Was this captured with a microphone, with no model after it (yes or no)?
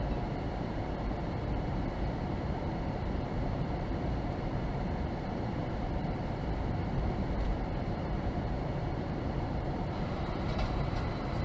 no